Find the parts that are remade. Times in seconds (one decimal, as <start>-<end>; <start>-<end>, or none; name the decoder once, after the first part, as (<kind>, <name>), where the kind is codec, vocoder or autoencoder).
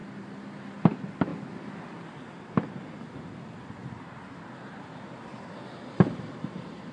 0.0-6.9 (vocoder, BigVGAN v2)